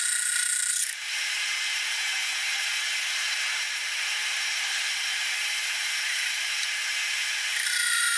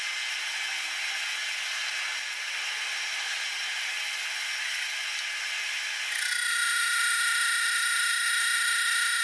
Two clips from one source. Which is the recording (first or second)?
second